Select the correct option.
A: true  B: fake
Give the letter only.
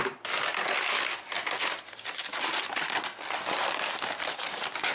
A